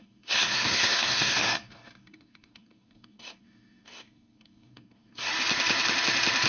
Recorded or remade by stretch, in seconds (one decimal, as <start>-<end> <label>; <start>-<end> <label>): 0.0-5.3 remade; 5.3-6.5 recorded